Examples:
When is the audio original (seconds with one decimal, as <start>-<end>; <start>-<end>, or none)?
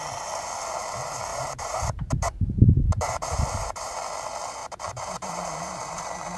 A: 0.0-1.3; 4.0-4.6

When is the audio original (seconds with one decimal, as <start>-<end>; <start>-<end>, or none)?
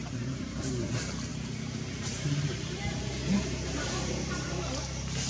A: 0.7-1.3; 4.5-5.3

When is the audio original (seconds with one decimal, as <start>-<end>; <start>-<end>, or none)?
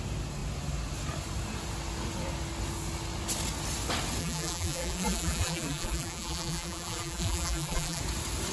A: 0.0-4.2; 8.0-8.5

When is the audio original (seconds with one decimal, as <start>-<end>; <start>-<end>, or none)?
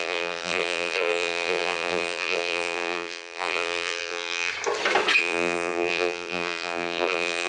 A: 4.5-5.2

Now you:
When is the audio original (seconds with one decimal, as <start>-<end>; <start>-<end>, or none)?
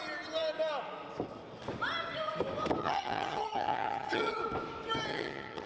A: 0.0-2.8; 4.4-5.1